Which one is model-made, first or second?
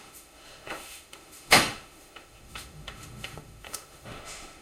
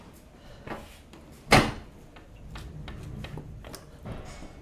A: first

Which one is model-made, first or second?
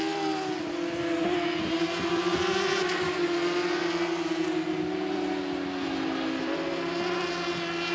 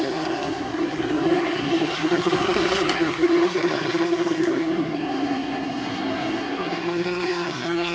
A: second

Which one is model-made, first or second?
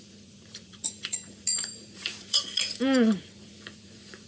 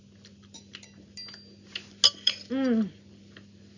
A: first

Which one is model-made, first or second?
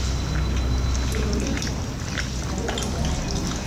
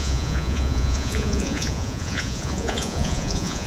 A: second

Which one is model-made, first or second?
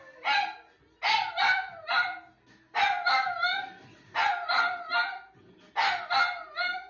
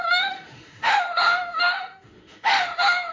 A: second